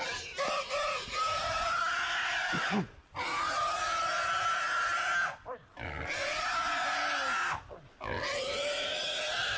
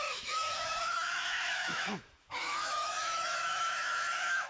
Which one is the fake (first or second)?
second